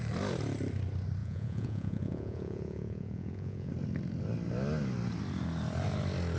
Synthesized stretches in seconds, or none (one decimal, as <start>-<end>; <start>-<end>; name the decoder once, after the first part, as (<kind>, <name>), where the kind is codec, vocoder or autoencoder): 1.2-3.7 (vocoder, Vocos)